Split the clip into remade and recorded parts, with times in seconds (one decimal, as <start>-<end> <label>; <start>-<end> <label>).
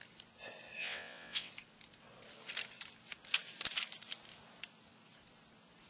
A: 0.0-0.8 recorded; 0.8-1.5 remade; 1.5-5.9 recorded